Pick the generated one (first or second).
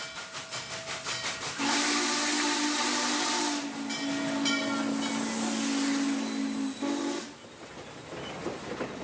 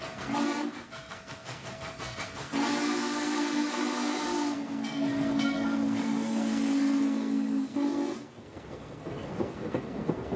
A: second